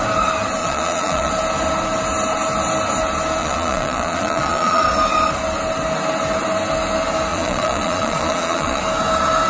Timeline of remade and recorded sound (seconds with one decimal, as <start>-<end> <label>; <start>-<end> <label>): 0.0-0.6 recorded; 0.6-1.3 remade; 1.3-3.4 recorded; 3.4-4.8 remade; 4.8-7.3 recorded; 7.3-8.8 remade; 8.8-9.5 recorded